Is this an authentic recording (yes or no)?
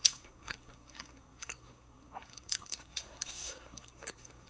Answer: no